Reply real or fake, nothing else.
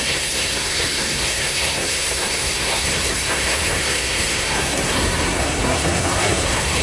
fake